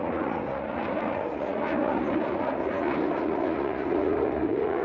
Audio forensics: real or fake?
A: fake